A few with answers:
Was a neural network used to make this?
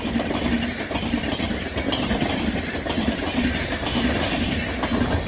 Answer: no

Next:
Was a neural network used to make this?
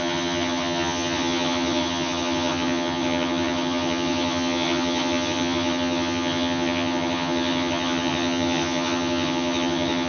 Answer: yes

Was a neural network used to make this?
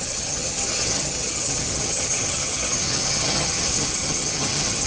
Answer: yes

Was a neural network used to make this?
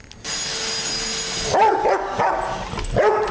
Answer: no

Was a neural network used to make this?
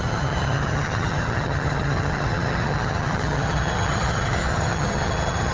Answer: yes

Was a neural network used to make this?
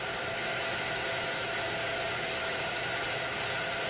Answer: no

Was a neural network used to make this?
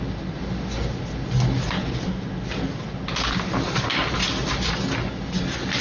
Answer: no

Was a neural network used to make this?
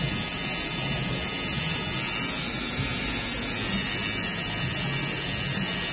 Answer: no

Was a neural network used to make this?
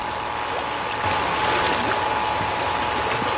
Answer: no